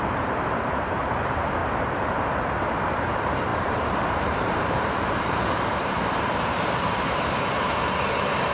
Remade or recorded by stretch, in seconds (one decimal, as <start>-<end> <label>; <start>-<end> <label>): 0.0-8.5 remade